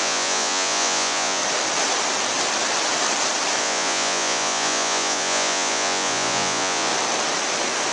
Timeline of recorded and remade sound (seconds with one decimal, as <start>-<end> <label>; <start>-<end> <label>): 0.0-1.4 remade; 1.4-3.6 recorded; 3.6-6.9 remade; 6.9-7.9 recorded